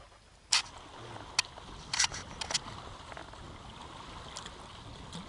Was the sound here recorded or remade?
recorded